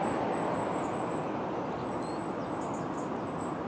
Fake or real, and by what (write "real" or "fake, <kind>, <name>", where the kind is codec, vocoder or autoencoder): real